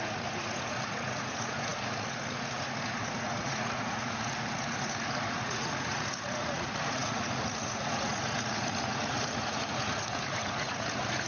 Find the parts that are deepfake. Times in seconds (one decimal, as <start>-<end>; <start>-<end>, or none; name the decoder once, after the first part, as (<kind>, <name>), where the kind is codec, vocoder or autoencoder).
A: 0.0-11.3 (vocoder, Vocos)